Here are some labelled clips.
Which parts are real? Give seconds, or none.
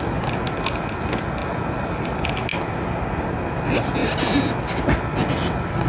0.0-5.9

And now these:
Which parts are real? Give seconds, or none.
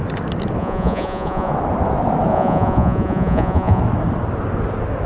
0.0-0.6; 1.5-2.3; 3.8-5.1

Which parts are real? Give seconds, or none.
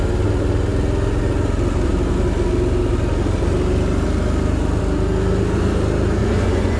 0.0-6.2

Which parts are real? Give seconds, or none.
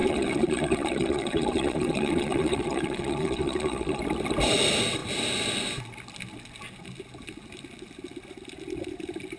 4.0-9.4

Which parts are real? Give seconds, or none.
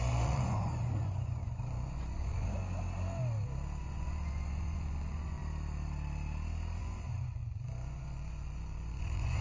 2.6-3.8; 5.4-6.8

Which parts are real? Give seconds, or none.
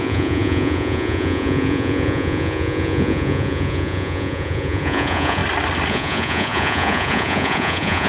5.4-5.9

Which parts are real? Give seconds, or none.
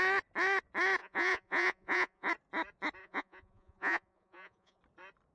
0.0-1.0; 2.3-3.0; 4.8-5.3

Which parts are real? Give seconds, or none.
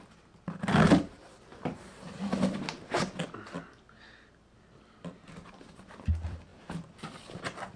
0.0-7.8